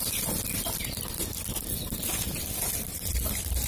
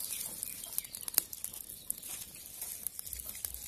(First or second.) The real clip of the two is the second